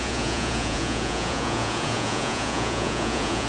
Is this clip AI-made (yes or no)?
yes